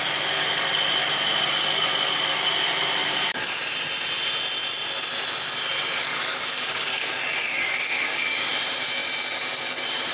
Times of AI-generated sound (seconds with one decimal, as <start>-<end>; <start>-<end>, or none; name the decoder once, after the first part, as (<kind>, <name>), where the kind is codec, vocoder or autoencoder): 3.0-3.6 (codec, DAC); 5.9-8.5